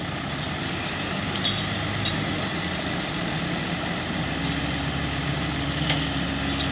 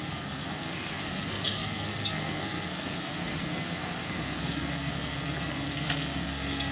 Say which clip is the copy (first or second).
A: second